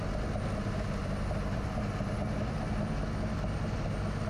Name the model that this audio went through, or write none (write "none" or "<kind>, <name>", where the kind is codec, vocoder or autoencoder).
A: none